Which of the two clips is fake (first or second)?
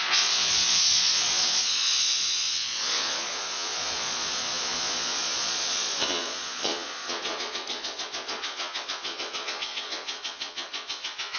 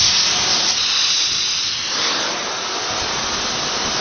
first